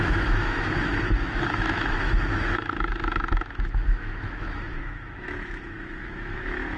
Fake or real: fake